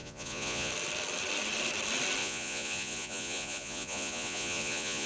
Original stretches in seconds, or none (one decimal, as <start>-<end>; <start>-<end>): 0.7-2.2